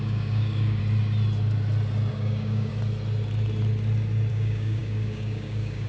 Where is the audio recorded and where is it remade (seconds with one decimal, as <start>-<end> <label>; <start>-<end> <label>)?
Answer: 0.0-0.8 remade; 0.8-2.1 recorded; 2.1-2.7 remade; 2.7-4.3 recorded; 4.3-5.9 remade